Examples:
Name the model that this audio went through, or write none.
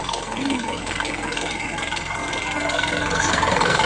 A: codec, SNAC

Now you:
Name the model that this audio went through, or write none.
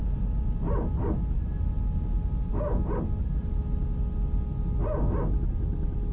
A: none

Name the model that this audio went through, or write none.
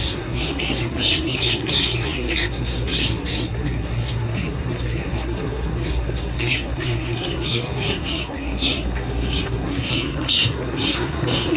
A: codec, SNAC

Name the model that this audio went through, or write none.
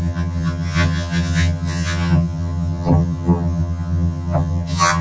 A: vocoder, HiFi-GAN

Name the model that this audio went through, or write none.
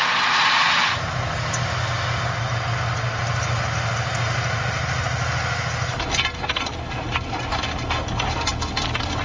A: none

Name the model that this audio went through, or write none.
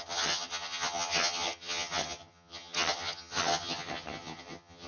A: vocoder, HiFi-GAN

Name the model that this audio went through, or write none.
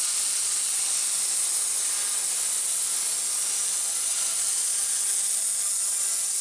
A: none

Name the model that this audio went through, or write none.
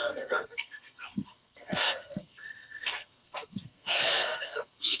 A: codec, SNAC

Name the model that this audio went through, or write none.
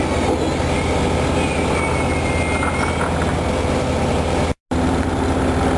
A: none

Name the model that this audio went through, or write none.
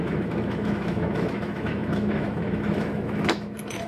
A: autoencoder, DAC-VAE